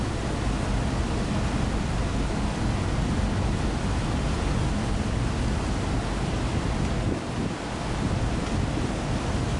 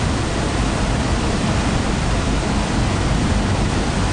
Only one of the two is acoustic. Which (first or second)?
first